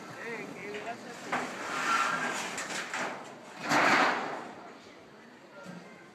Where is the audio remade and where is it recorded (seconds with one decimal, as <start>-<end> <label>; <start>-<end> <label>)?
0.0-6.1 recorded